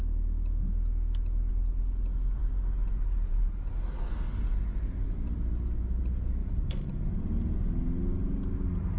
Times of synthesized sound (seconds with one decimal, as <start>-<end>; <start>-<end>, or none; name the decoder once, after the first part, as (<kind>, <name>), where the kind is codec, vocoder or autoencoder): 6.4-7.2 (vocoder, BigVGAN v2)